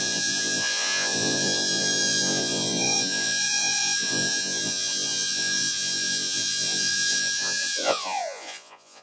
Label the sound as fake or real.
fake